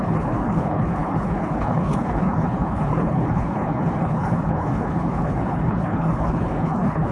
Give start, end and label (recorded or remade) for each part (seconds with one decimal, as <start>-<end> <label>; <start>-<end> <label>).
0.0-7.1 remade